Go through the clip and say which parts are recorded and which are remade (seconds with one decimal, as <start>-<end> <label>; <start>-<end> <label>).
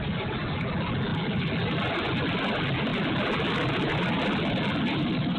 0.0-5.4 recorded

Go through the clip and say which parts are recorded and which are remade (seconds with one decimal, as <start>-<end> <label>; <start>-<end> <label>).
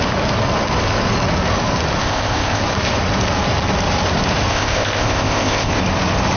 0.0-2.0 recorded; 2.0-2.6 remade; 2.6-4.5 recorded; 4.5-5.8 remade; 5.8-6.4 recorded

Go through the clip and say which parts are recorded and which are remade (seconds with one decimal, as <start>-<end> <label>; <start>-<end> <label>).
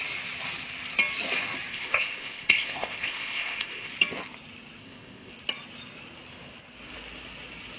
0.0-1.7 recorded; 1.7-3.9 remade; 3.9-4.8 recorded; 4.8-5.3 remade; 5.3-7.8 recorded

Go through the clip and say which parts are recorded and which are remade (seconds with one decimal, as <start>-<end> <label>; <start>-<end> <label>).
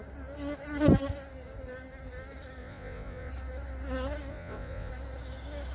0.0-2.6 recorded; 2.6-3.3 remade; 3.3-4.3 recorded; 4.3-4.9 remade; 4.9-5.7 recorded